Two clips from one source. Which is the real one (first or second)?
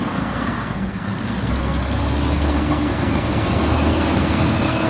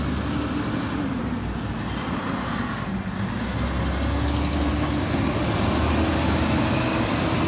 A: second